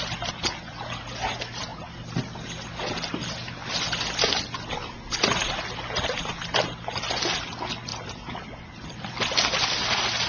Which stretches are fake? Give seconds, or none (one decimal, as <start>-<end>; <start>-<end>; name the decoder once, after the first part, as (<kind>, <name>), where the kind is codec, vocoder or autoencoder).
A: 1.7-2.4 (vocoder, BigVGAN v2); 7.9-9.1